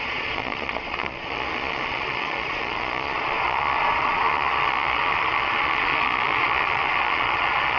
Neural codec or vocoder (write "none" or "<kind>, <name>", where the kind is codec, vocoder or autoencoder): vocoder, Vocos